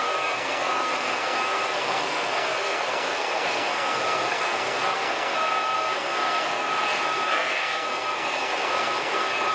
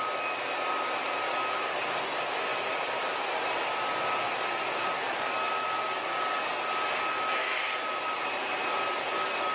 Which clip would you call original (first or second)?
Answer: second